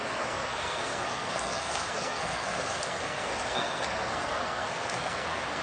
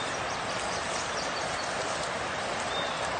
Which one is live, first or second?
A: second